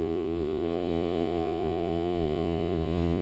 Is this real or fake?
fake